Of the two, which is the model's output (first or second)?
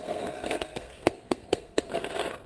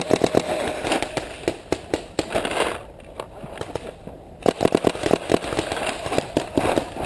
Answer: first